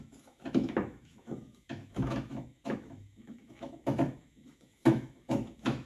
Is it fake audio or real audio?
fake